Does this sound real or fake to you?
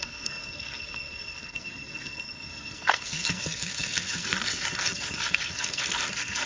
fake